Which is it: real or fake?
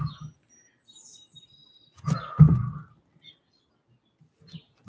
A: real